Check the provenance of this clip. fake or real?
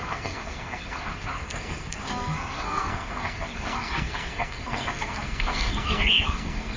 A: fake